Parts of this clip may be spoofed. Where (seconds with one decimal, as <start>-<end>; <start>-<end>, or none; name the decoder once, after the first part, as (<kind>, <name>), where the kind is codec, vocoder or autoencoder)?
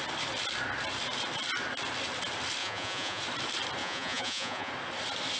2.6-3.2 (vocoder, Vocos); 3.8-4.7